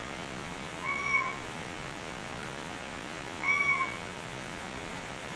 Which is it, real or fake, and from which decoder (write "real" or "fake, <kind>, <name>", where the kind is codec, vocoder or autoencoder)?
fake, vocoder, Vocos